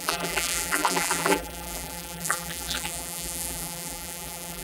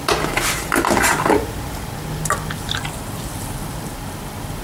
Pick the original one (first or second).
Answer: second